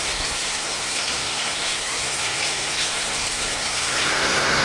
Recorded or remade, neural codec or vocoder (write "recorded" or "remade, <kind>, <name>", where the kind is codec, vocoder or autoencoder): remade, codec, SNAC